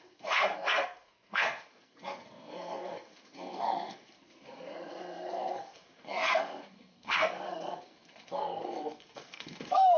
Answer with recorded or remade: remade